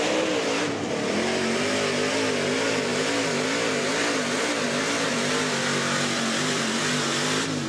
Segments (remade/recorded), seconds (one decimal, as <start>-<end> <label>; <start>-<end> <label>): 0.0-2.9 recorded; 2.9-6.9 remade; 6.9-7.7 recorded